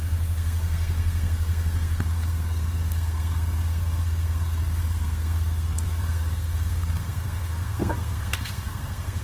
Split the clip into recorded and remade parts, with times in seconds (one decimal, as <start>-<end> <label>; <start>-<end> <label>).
0.0-9.2 remade